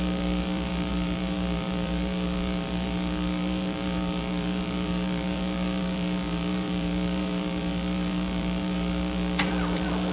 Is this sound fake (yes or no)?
yes